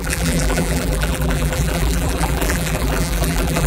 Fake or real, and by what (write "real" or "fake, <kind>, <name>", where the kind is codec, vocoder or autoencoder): fake, vocoder, BigVGAN v2